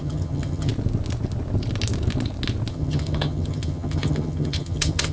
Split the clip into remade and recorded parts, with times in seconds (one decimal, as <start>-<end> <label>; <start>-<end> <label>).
0.0-0.7 remade; 0.7-2.7 recorded; 2.7-5.1 remade